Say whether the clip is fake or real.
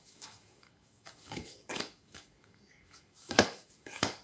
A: fake